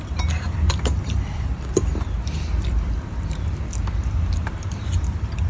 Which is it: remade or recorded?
remade